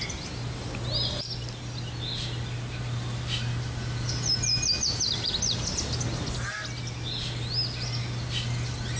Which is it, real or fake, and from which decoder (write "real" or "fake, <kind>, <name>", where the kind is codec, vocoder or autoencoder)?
real